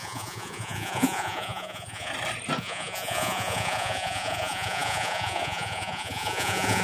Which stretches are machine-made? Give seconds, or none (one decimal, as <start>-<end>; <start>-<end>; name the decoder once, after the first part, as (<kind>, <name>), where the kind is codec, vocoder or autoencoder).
0.0-2.1 (vocoder, Vocos); 2.6-6.8